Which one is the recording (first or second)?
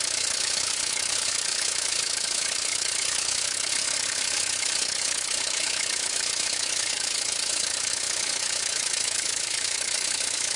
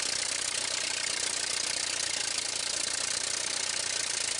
second